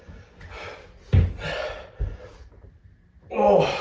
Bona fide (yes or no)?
yes